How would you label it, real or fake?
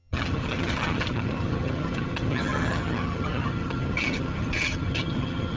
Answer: fake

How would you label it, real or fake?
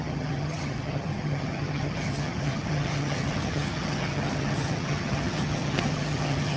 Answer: fake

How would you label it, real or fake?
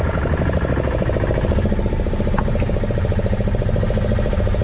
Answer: real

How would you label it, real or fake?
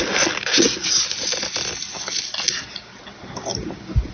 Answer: real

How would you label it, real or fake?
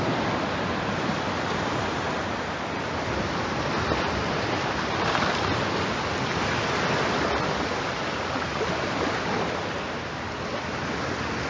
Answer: real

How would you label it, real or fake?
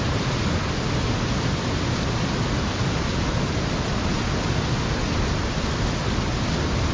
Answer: real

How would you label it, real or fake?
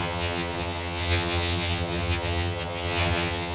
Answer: fake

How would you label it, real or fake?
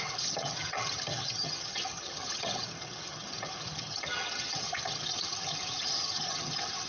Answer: fake